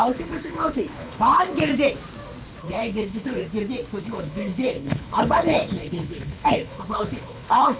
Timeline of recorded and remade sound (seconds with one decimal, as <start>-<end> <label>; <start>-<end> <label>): 0.0-1.7 remade; 1.7-2.6 recorded; 2.6-3.4 remade; 3.4-4.0 recorded; 4.0-7.8 remade